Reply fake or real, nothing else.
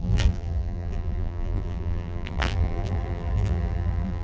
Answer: fake